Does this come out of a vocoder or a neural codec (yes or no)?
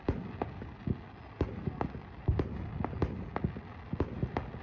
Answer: no